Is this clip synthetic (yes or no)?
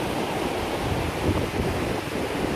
no